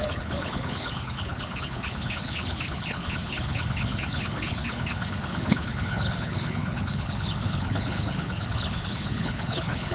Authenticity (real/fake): fake